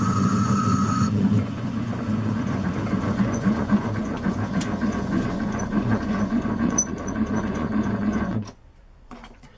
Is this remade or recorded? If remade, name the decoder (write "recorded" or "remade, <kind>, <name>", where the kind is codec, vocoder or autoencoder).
remade, vocoder, Vocos